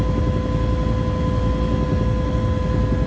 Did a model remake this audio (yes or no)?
no